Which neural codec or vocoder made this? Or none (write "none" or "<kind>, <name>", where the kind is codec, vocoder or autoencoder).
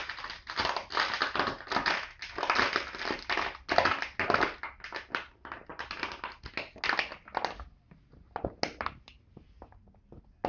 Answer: none